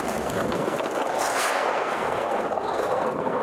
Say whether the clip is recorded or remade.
remade